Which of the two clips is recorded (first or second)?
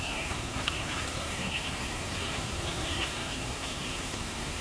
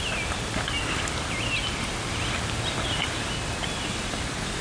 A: second